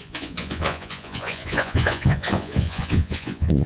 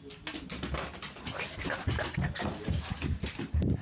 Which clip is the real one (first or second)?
second